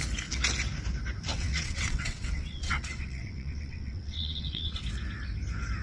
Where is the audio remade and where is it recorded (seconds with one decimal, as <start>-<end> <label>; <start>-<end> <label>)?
0.0-1.3 recorded; 1.3-4.8 remade; 4.8-5.8 recorded